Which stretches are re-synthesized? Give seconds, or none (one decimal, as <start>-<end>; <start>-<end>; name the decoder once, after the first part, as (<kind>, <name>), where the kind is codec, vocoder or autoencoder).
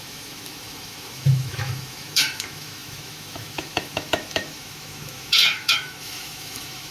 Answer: 0.0-6.9 (autoencoder, DAC-VAE)